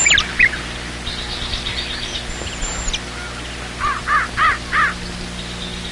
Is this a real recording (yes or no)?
yes